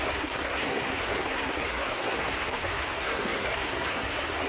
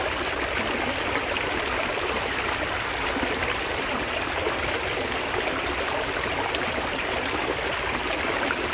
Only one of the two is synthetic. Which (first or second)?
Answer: first